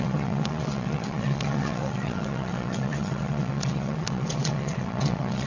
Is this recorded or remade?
remade